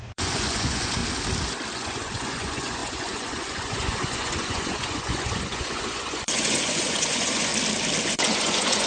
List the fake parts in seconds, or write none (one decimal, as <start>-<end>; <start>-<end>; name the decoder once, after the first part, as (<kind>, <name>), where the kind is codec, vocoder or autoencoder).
0.0-1.0 (vocoder, Vocos); 1.7-7.5; 8.0-8.9